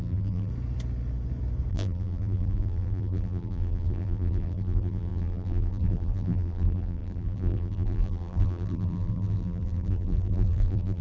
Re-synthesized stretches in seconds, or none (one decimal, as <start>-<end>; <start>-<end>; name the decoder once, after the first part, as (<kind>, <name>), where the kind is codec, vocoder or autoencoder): 0.0-0.5 (vocoder, BigVGAN v2); 1.7-11.0